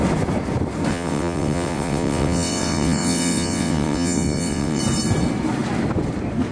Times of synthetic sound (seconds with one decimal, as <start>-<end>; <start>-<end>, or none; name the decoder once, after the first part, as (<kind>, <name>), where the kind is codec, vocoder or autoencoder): 0.9-4.8 (vocoder, WaveNeXt)